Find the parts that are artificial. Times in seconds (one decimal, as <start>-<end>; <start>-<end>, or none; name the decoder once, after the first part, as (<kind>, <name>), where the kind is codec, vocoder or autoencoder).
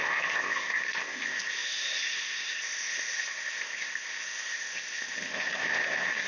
0.0-6.3 (codec, ZipCodec)